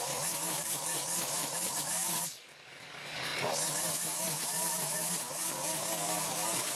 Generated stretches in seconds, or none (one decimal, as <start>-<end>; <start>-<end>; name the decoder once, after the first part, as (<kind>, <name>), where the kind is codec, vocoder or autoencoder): 0.0-6.8 (codec, DAC)